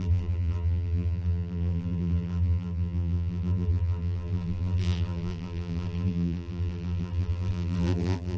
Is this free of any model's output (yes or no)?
no